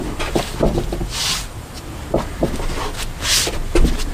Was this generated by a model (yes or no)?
no